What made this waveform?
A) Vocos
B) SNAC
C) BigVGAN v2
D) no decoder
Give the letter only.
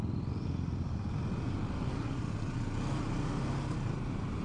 D